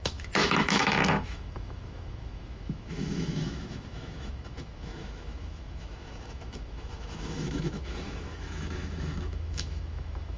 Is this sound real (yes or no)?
no